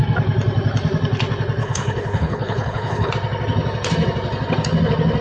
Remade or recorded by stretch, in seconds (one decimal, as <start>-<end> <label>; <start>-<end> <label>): 0.0-1.6 recorded; 1.6-3.1 remade; 3.1-5.2 recorded